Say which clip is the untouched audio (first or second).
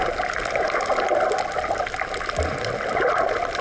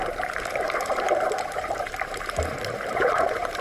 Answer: first